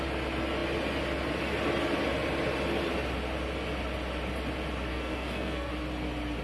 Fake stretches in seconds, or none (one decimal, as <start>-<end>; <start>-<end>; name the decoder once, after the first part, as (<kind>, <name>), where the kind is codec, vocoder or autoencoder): 4.9-5.7 (codec, SNAC)